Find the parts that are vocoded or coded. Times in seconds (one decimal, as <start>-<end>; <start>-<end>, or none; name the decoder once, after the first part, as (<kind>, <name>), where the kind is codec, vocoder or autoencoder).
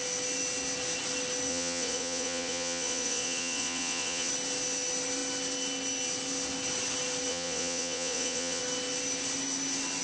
1.5-4.3 (vocoder, Vocos); 7.3-8.6